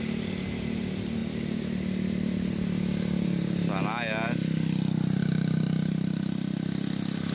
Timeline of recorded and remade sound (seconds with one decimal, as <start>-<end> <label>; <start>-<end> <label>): 0.0-7.3 recorded